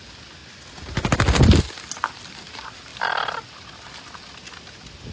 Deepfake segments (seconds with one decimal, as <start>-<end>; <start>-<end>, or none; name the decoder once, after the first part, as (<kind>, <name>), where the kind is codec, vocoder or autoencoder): none